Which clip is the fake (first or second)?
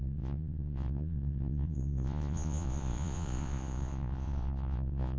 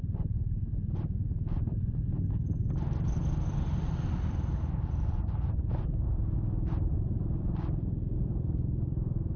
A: first